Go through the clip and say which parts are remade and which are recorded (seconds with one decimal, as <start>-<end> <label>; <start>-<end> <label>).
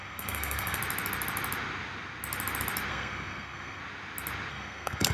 0.0-0.8 remade; 0.8-2.9 recorded; 2.9-3.8 remade; 3.8-4.5 recorded; 4.5-5.1 remade